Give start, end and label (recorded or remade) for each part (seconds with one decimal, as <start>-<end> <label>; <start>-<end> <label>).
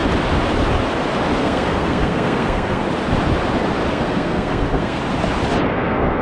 0.0-1.4 recorded; 1.4-2.8 remade; 2.8-3.9 recorded; 3.9-5.0 remade; 5.0-5.7 recorded; 5.7-6.2 remade